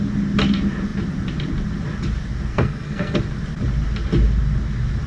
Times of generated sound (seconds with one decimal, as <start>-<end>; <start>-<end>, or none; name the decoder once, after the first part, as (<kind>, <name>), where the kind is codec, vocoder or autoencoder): 2.5-3.2 (codec, SNAC)

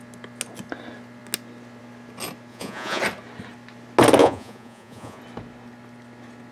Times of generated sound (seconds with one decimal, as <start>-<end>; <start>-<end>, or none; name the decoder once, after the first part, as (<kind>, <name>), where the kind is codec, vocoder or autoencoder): 2.5-3.0 (vocoder, Vocos); 4.2-5.2

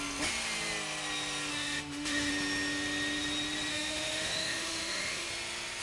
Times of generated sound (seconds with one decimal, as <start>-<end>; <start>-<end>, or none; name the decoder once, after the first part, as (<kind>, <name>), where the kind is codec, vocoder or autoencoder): 1.5-2.3 (autoencoder, DAC-VAE); 3.7-5.3